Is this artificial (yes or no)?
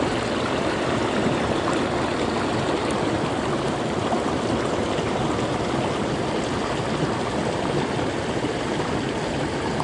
no